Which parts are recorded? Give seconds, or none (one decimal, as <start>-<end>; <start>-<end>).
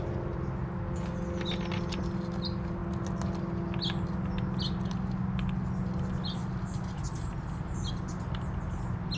0.0-9.2